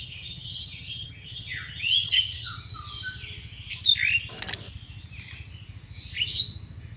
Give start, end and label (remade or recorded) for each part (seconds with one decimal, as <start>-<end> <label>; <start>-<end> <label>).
0.0-2.5 remade; 2.5-7.0 recorded